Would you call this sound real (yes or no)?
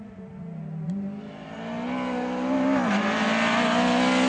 yes